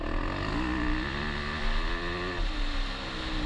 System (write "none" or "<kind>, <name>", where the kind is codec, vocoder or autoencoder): none